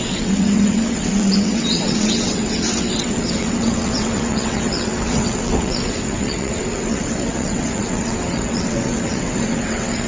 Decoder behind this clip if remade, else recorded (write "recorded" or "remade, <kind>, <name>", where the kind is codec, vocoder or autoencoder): remade, vocoder, WaveNeXt